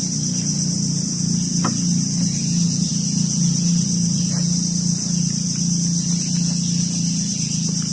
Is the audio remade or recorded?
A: recorded